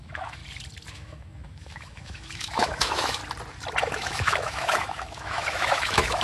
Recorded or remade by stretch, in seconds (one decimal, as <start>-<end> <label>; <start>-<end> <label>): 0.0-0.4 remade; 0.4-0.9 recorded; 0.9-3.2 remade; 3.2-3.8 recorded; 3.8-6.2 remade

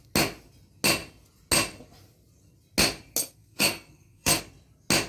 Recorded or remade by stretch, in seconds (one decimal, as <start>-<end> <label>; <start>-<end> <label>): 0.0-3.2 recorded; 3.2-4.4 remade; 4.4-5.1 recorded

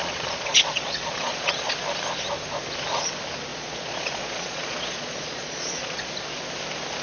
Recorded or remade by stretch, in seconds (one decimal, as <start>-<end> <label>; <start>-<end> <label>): 0.0-1.7 remade; 1.7-3.5 recorded; 3.5-6.1 remade; 6.1-7.0 recorded

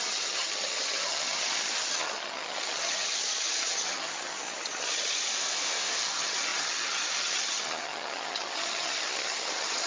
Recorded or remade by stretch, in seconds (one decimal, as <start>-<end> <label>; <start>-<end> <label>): 0.0-5.3 remade; 5.3-6.0 recorded; 6.0-9.9 remade